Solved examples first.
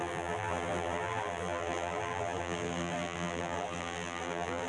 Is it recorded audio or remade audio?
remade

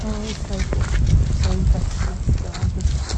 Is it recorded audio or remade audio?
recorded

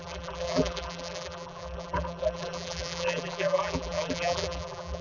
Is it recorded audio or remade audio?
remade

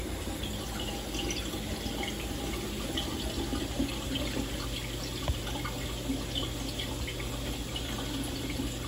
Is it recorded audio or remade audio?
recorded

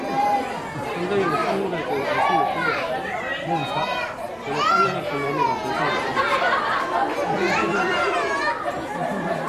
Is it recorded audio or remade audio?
recorded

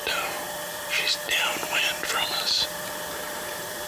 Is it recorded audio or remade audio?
remade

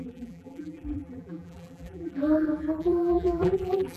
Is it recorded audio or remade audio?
remade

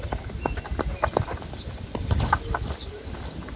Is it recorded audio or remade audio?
recorded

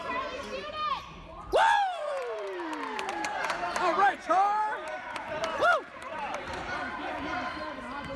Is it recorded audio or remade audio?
remade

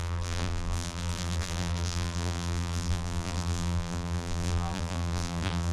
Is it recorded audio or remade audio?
remade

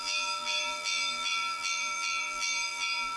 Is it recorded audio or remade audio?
remade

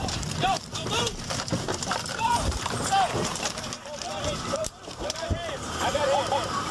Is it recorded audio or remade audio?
remade